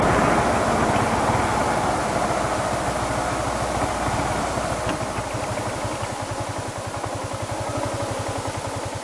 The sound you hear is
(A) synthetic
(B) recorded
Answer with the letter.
B